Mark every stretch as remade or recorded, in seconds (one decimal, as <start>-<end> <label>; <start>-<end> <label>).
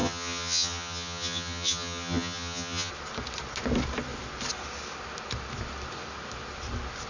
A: 0.0-2.9 remade; 2.9-7.1 recorded